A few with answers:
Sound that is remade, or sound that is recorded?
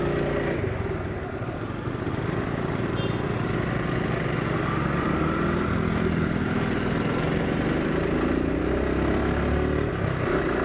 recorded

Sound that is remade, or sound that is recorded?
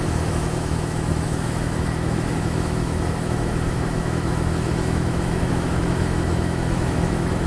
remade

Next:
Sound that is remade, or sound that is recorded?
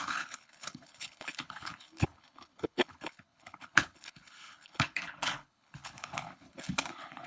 remade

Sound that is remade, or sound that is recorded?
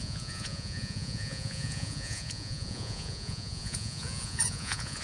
remade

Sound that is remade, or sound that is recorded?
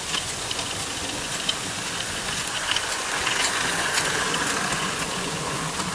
remade